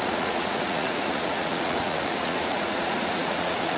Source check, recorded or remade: remade